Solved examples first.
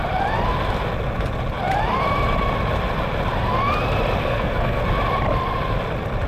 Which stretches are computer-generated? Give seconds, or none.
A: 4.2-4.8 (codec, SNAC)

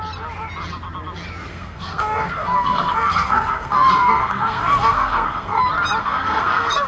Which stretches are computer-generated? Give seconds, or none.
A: 1.5-5.6 (codec, SNAC); 6.0-6.9

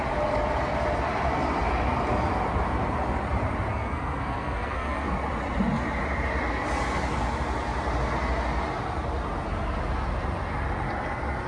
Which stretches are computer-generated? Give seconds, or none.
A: 3.7-5.1 (codec, SNAC)

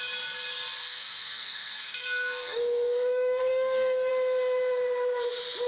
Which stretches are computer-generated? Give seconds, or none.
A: 0.8-4.1 (codec, SNAC)

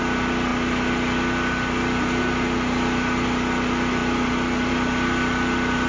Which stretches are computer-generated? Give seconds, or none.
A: none

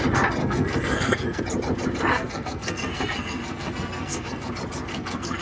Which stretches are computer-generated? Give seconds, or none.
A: 0.4-1.4 (codec, SNAC); 2.1-4.5; 4.9-5.4

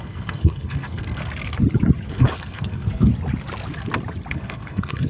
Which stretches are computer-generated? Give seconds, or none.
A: 0.0-1.2 (codec, SNAC); 2.1-3.1; 4.3-5.1